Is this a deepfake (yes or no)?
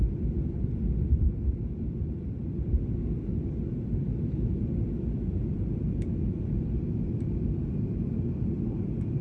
yes